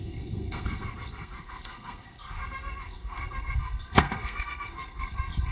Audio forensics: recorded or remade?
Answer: remade